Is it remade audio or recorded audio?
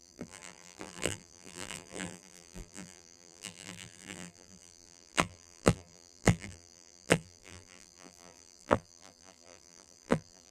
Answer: remade